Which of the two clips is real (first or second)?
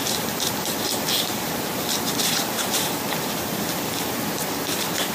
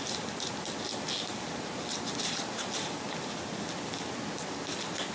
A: second